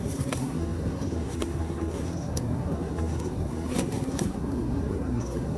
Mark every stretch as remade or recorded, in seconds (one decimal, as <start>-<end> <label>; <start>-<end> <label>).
0.0-5.6 remade